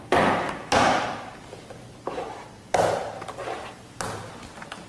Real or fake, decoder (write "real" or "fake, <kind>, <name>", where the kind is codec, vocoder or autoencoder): real